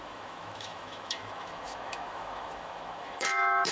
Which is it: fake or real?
fake